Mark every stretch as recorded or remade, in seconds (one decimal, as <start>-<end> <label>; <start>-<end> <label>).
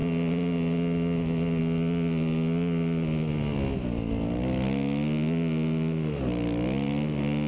0.0-7.5 recorded